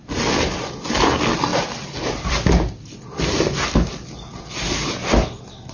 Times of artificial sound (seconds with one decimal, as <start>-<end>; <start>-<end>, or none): 1.5-2.3